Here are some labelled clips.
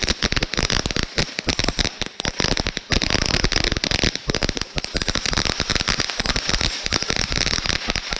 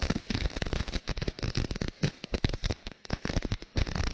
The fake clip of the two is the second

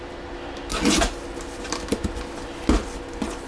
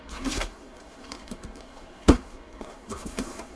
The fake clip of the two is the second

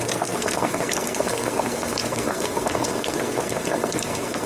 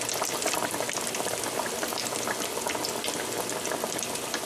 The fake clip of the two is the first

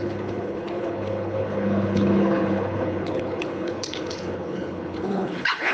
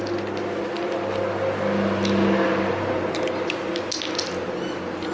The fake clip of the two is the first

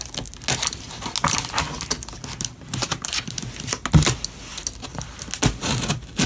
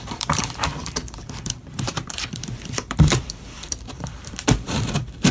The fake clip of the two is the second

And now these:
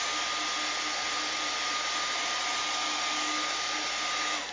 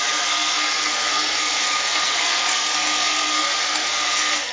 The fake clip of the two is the second